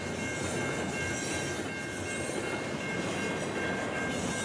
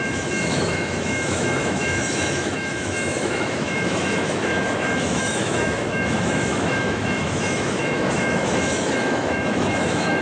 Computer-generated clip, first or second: second